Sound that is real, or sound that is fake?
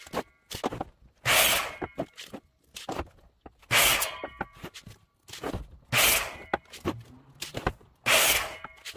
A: real